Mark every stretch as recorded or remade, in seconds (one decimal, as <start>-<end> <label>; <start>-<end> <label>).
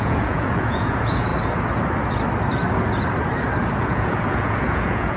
0.0-1.3 remade; 1.3-3.8 recorded; 3.8-5.2 remade